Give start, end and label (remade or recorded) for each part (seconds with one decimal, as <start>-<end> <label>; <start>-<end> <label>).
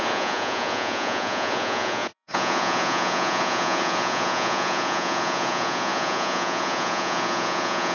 0.0-7.9 remade